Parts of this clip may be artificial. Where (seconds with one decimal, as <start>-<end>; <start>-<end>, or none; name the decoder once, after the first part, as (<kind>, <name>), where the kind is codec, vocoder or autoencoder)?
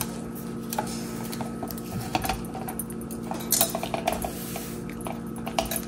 none